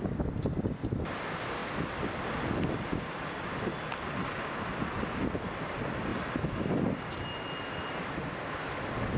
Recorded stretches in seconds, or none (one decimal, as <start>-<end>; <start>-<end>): 0.0-9.2